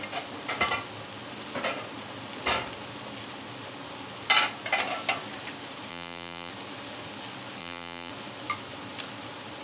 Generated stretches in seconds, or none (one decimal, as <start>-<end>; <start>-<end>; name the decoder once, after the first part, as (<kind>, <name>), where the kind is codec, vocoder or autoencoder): 5.9-6.5 (vocoder, BigVGAN v2); 7.6-8.1